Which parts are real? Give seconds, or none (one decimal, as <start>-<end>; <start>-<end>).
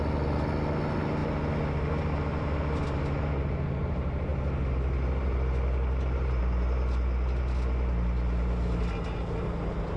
0.0-10.0